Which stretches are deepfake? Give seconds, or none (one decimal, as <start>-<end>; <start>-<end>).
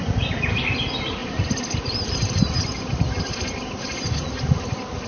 none